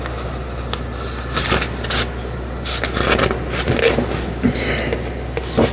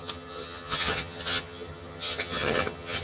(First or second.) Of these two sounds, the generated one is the second